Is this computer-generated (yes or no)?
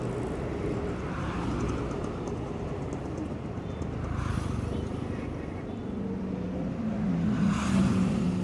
no